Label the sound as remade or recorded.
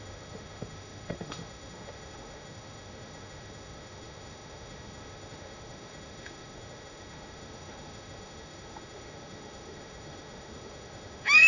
remade